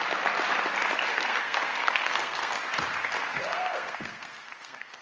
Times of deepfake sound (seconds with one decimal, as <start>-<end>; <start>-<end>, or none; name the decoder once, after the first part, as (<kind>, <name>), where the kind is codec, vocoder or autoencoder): 1.1-2.6 (codec, SNAC); 3.3-5.0